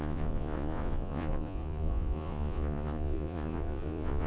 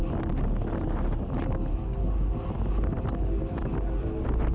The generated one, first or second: first